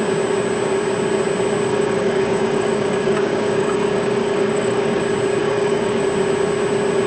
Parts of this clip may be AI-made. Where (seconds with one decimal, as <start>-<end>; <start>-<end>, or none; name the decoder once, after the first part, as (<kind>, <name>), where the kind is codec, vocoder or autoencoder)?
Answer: 1.7-5.0 (codec, DAC); 5.4-6.0